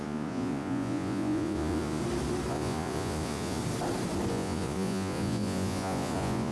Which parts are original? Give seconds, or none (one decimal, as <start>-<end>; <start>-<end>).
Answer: 2.0-2.5; 3.6-4.3